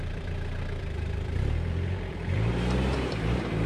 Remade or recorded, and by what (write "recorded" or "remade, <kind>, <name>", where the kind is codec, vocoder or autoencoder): remade, vocoder, BigVGAN v2